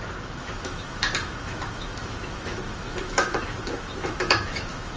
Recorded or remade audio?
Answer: remade